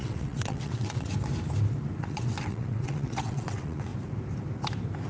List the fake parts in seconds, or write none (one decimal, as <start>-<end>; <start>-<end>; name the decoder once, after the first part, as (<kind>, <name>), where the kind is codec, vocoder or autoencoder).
0.0-1.1 (vocoder, WaveNeXt); 2.0-3.9